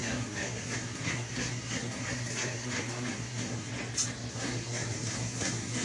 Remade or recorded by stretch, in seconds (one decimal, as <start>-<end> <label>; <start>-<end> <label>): 0.0-3.7 remade; 3.7-4.3 recorded; 4.3-5.8 remade